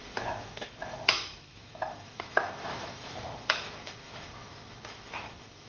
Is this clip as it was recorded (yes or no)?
no